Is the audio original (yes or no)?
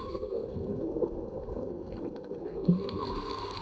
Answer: no